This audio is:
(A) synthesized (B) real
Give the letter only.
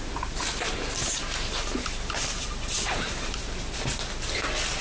B